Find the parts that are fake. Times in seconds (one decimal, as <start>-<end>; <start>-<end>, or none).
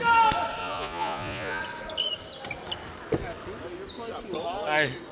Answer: 0.6-1.6